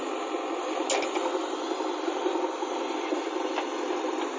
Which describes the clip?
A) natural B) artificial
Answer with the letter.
A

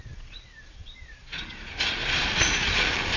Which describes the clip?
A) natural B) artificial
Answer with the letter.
B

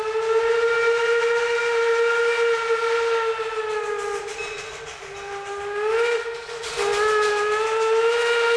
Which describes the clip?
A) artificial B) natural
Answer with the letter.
B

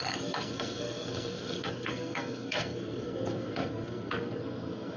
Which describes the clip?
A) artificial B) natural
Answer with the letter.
A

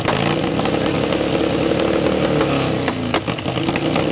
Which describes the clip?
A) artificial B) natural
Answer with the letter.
B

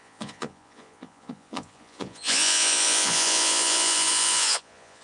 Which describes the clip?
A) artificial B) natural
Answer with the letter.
A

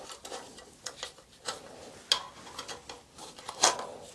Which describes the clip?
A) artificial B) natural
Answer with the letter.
B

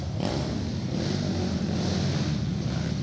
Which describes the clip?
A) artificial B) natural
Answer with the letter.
B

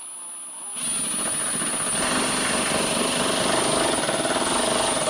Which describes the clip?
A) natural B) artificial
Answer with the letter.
A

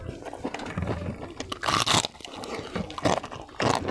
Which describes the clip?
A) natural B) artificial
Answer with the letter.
A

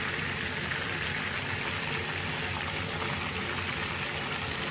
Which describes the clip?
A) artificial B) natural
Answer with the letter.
B